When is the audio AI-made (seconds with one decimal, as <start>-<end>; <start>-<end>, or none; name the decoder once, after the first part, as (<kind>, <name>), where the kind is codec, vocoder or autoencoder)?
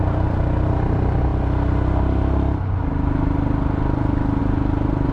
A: none